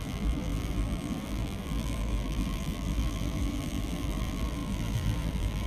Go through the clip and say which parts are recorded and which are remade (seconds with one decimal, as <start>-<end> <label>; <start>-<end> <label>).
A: 0.0-5.7 remade